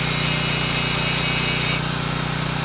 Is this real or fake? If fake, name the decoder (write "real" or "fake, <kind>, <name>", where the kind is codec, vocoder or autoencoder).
real